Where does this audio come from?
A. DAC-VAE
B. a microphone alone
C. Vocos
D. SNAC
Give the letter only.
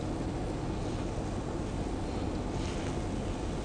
B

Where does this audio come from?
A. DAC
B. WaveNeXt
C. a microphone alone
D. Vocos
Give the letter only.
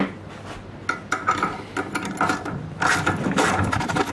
C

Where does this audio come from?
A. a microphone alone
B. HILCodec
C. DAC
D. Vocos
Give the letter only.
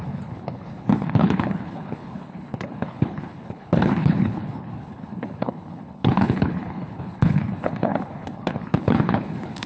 B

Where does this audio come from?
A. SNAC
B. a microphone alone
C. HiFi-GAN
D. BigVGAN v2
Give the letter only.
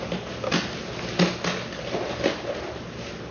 B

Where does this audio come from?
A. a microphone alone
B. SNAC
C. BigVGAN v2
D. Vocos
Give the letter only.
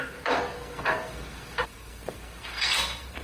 B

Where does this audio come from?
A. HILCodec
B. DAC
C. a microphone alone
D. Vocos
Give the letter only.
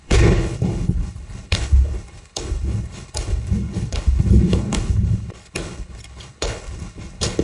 A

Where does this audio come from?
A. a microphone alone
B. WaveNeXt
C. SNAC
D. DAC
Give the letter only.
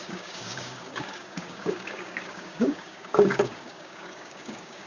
D